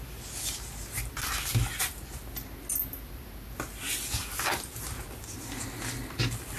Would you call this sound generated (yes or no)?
no